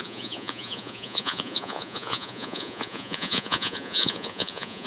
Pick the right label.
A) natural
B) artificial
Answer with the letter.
B